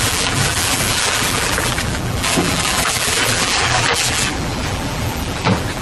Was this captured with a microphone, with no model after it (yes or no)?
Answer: no